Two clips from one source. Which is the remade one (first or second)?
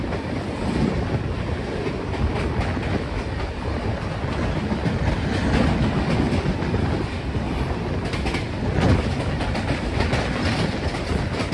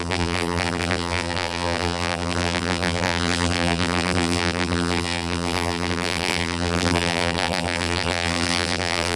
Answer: second